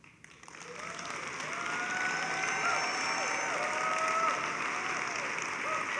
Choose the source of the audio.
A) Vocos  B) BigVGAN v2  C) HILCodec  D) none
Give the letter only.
D